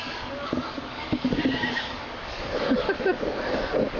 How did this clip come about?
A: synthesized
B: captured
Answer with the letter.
A